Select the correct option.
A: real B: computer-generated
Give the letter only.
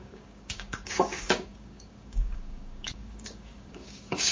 B